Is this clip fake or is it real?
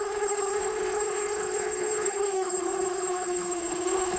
fake